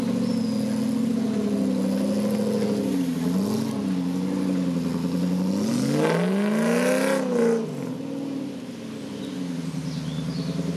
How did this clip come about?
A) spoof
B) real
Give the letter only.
B